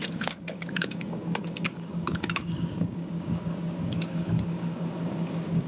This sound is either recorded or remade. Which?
remade